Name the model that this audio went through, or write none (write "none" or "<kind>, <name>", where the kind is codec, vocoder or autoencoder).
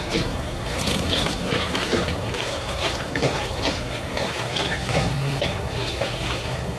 codec, SNAC